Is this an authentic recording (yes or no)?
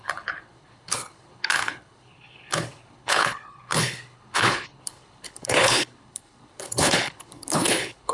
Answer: no